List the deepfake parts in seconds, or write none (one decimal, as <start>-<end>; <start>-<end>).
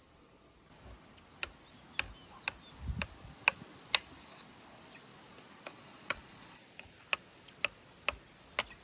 5.7-6.6